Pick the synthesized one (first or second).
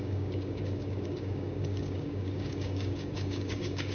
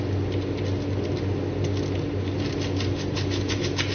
first